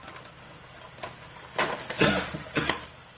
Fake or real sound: real